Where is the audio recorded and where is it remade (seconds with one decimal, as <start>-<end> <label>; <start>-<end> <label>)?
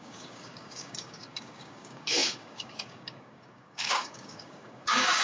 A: 0.0-5.2 remade